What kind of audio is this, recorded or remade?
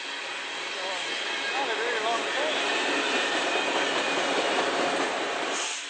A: recorded